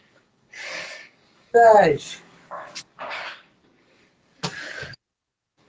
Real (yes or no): no